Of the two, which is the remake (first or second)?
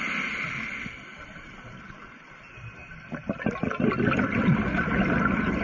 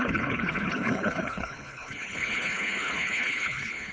second